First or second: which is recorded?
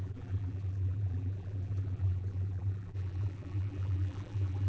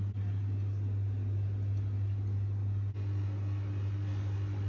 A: second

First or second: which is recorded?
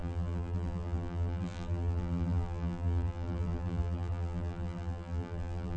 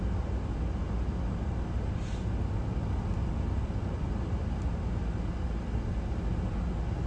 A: second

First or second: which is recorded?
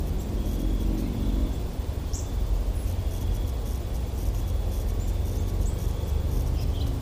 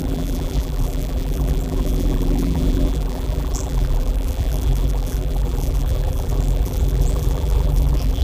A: first